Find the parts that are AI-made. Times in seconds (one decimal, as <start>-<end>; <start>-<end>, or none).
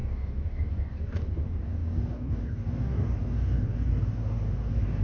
0.0-5.0